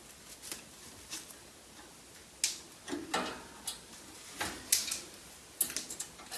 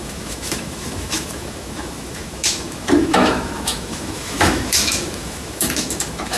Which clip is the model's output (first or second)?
second